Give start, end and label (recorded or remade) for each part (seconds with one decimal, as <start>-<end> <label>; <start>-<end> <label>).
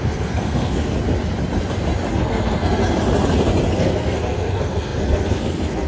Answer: 0.0-0.9 remade; 0.9-2.1 recorded; 2.1-2.8 remade; 2.8-3.7 recorded; 3.7-5.9 remade